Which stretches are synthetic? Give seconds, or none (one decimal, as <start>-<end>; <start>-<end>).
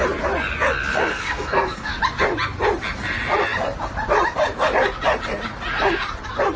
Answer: 1.1-2.0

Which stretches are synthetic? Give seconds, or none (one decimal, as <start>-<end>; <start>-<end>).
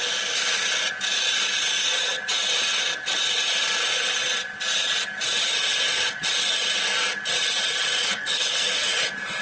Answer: 8.0-8.9